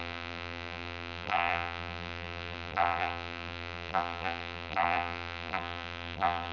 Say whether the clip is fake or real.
fake